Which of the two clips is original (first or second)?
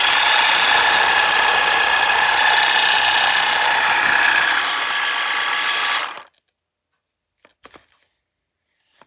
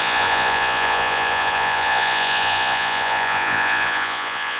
first